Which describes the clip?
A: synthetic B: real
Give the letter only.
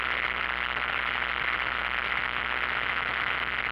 B